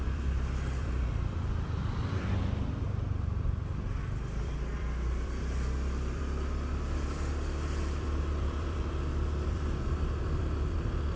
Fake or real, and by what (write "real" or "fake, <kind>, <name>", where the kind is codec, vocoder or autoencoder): fake, vocoder, BigVGAN v2